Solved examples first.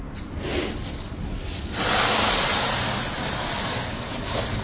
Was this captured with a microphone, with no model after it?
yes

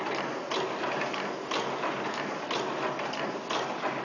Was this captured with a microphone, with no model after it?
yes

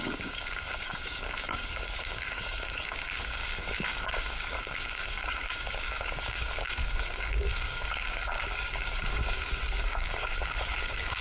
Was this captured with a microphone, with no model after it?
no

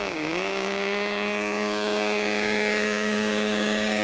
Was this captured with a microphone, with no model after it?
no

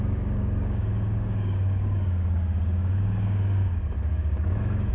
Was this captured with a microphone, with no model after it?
no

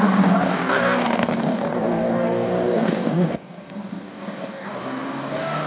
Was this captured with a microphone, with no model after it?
no